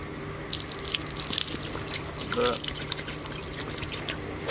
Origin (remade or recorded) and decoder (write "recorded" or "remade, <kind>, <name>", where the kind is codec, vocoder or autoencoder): recorded